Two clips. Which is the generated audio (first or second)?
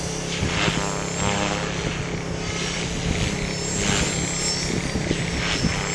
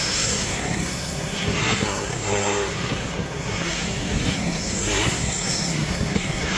second